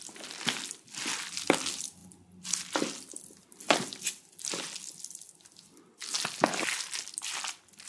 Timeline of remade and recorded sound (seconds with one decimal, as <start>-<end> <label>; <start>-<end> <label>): 0.0-7.9 recorded